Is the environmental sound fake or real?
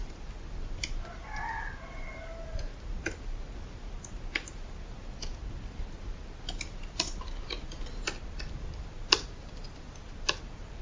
real